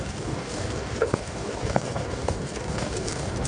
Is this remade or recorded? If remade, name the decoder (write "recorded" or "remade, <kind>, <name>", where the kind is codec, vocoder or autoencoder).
remade, codec, DAC